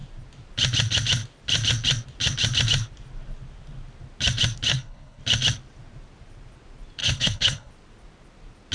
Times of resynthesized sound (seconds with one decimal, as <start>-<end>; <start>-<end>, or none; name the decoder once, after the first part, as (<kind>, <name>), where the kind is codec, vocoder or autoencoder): 4.7-5.2 (codec, HILCodec); 7.0-7.7